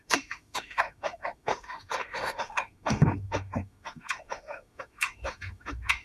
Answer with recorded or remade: remade